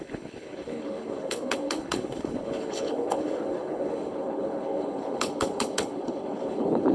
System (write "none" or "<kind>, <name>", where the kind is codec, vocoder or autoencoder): codec, HILCodec